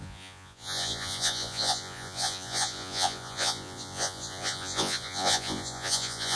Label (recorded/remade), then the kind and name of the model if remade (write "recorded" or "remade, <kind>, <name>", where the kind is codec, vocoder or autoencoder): remade, vocoder, Vocos